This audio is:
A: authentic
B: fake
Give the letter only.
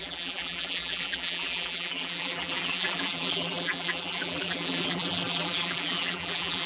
B